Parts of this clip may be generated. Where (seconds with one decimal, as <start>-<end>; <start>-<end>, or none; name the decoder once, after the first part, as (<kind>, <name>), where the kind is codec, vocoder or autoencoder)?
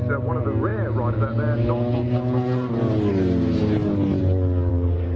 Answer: none